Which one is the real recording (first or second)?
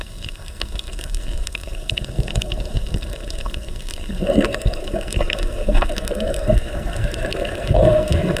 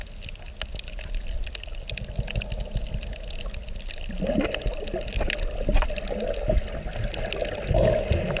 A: second